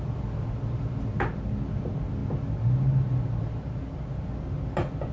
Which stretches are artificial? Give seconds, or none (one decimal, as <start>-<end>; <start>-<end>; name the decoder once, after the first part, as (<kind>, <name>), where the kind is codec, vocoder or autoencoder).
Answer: none